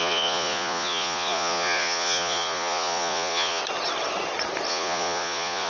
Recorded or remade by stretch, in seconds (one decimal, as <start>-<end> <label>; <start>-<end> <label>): 0.0-3.6 remade; 3.6-4.7 recorded; 4.7-5.7 remade